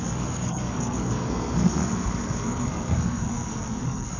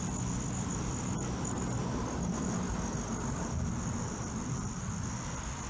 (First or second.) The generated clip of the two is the first